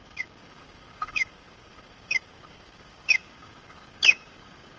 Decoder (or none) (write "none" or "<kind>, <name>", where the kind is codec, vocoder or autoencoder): codec, DAC